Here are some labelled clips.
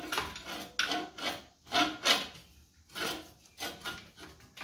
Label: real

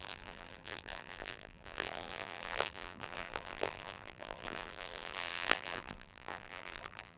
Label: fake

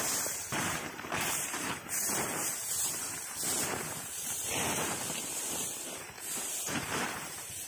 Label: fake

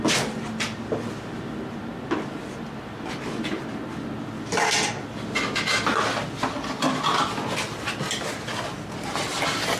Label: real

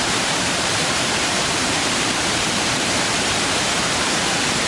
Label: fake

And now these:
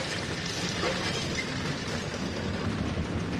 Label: real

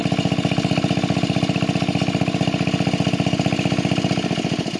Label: real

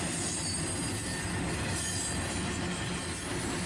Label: real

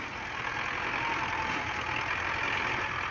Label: real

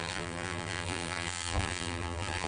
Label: fake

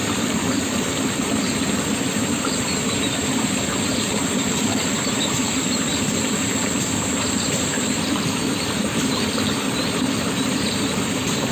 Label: fake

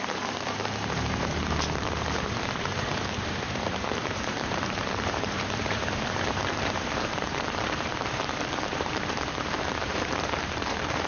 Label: fake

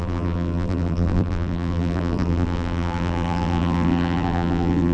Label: fake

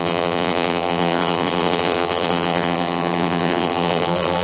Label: fake